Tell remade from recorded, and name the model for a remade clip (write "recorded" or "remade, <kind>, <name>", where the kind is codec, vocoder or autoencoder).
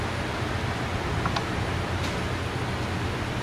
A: recorded